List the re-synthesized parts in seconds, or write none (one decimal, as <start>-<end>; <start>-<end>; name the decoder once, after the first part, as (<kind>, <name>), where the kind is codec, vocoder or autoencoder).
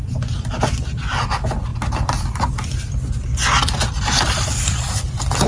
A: none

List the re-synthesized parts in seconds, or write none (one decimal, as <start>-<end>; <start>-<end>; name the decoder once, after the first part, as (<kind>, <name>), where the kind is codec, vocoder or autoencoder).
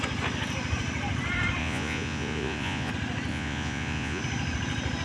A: 1.6-2.9 (vocoder, Vocos); 3.3-4.2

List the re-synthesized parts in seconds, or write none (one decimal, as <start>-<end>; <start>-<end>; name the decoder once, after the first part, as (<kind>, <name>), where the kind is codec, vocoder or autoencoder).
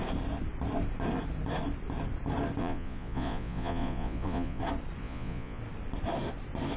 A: 2.6-4.6 (vocoder, Vocos); 5.0-5.6